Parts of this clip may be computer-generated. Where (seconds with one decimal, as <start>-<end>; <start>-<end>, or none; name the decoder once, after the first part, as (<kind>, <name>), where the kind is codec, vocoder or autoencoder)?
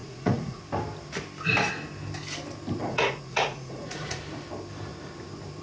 0.0-0.6 (vocoder, Vocos); 2.8-4.2